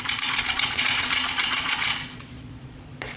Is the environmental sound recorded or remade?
remade